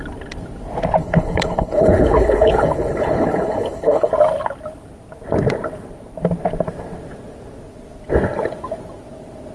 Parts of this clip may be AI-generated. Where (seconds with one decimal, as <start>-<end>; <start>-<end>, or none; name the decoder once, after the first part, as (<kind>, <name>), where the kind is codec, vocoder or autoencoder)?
1.0-4.1 (codec, HILCodec)